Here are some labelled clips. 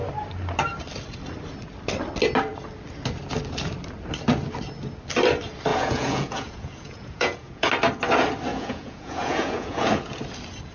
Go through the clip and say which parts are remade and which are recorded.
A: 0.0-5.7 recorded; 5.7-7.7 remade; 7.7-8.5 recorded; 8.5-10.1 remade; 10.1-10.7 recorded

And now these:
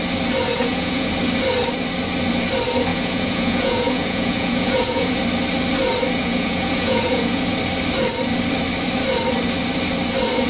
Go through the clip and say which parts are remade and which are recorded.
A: 0.0-0.5 recorded; 0.5-1.1 remade; 1.1-2.9 recorded; 2.9-5.2 remade; 5.2-6.2 recorded; 6.2-7.4 remade; 7.4-10.5 recorded

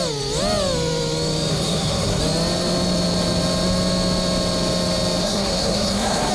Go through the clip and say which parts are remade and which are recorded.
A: 0.0-1.5 recorded; 1.5-2.2 remade; 2.2-5.2 recorded; 5.2-6.3 remade